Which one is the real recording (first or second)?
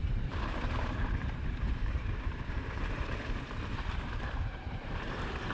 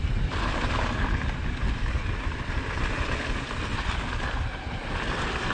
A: second